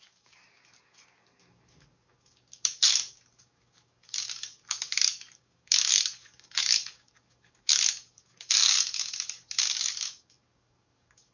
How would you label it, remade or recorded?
remade